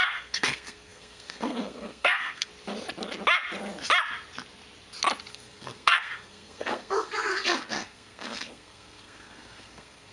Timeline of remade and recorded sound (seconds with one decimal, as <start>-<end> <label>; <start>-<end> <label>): 0.0-2.5 remade; 2.5-5.3 recorded; 5.3-10.1 remade